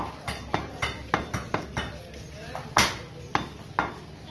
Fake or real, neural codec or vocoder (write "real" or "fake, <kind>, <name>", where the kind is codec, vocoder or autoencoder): real